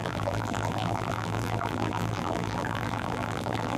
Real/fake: fake